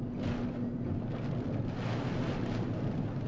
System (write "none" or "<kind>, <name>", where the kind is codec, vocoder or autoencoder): none